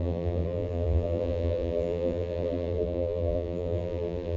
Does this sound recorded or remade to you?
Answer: remade